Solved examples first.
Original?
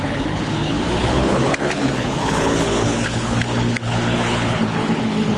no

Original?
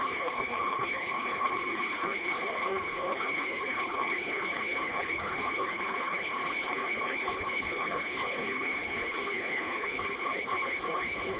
no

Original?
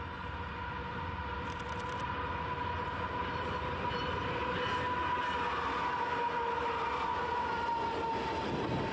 yes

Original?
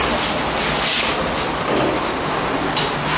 yes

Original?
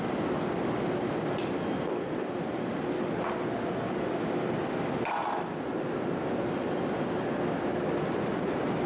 yes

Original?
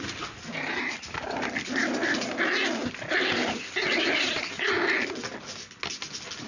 yes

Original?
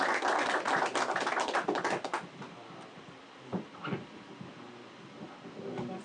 yes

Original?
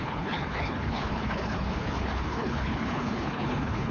no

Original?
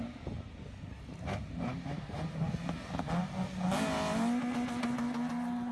yes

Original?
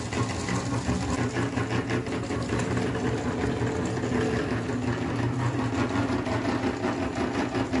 yes